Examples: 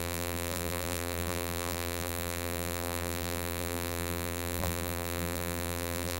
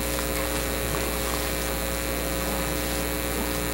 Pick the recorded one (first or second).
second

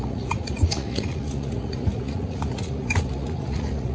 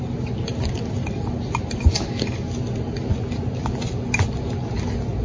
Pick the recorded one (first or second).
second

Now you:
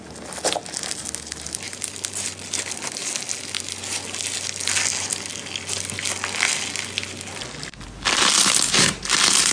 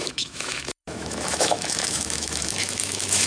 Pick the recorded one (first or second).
first